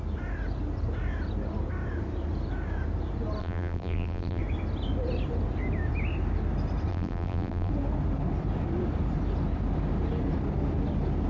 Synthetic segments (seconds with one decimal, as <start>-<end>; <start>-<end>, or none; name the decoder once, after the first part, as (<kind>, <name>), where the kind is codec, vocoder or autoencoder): 3.4-4.4 (vocoder, BigVGAN v2); 6.9-7.7